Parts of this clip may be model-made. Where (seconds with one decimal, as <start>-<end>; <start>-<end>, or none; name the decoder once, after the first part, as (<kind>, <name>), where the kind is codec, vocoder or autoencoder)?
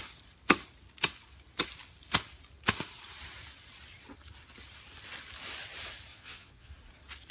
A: 6.1-6.7 (vocoder, Vocos)